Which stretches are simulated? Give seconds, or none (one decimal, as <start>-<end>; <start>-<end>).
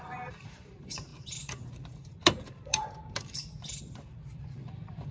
0.0-5.1